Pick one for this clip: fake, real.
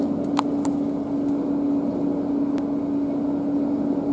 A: real